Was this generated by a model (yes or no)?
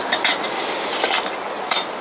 no